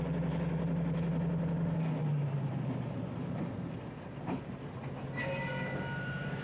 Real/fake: real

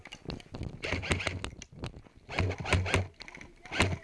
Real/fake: real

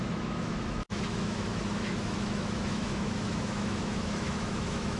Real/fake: fake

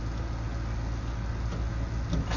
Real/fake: real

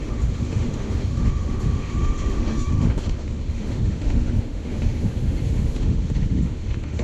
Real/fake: fake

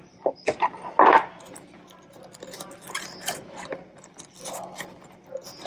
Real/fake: real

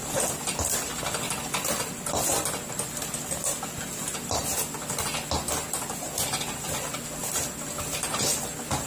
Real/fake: real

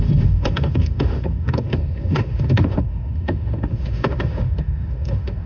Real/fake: fake